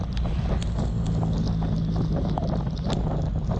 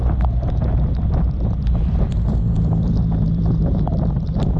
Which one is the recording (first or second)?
first